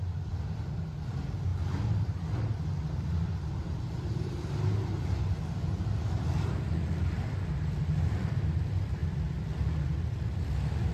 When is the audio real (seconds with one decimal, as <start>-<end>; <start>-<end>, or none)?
none